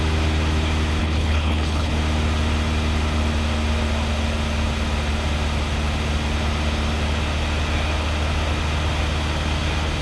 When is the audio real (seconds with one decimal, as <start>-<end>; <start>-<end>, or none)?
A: 0.0-1.0; 1.9-10.0